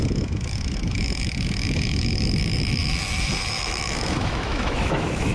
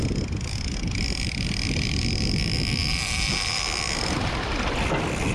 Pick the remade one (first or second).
first